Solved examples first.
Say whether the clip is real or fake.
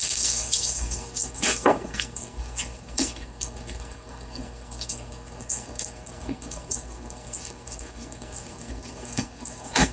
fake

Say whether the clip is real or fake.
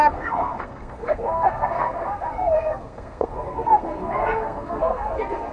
fake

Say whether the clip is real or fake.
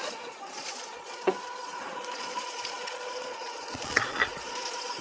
fake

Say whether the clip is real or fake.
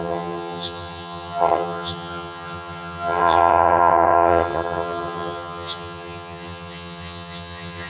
fake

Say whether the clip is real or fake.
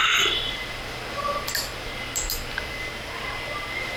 real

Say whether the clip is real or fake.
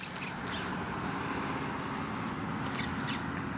real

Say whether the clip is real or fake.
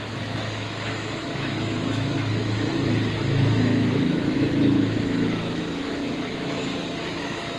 fake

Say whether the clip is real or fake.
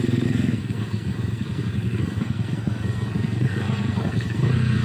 fake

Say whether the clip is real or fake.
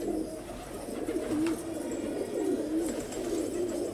real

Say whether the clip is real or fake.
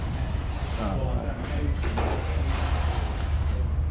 real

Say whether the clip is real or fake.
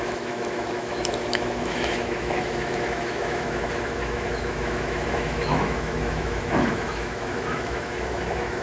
fake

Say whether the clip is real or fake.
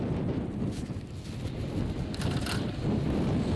real